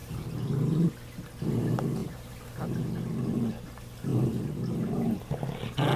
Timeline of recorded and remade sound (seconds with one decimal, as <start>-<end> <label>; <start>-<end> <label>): 0.0-0.9 remade; 0.9-2.0 recorded; 2.0-2.8 remade; 2.8-4.1 recorded; 4.1-5.4 remade; 5.4-6.0 recorded